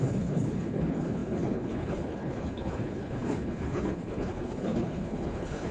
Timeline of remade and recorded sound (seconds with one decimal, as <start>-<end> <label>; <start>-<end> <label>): 0.0-5.7 remade

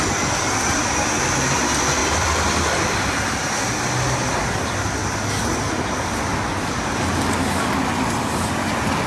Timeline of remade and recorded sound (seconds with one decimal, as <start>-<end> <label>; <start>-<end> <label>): 0.0-9.1 recorded

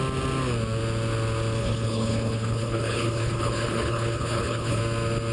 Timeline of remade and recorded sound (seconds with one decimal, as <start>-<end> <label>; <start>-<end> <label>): 0.0-1.6 recorded; 1.6-4.8 remade; 4.8-5.3 recorded

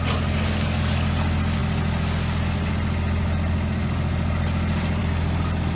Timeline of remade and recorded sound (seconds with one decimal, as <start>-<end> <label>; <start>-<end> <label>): 0.0-5.7 recorded

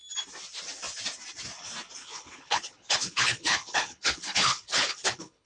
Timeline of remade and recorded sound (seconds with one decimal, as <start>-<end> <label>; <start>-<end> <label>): 0.0-2.0 recorded; 2.0-5.5 remade

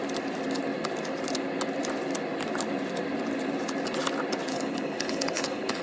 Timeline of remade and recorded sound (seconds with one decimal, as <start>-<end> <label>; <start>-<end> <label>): 0.0-4.5 recorded; 4.5-5.8 remade

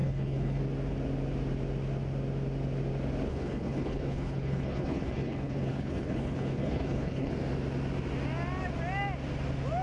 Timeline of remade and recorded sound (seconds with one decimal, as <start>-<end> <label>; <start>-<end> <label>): 0.0-0.6 remade; 0.6-3.3 recorded; 3.3-7.3 remade; 7.3-9.8 recorded

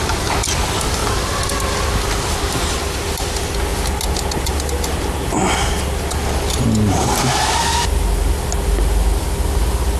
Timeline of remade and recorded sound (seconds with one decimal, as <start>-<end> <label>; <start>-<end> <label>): 0.0-10.0 recorded